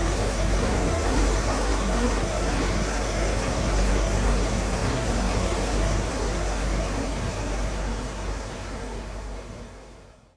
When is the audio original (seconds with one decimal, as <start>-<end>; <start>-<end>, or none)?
none